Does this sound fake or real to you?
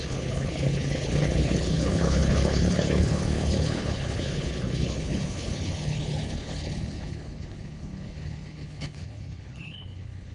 fake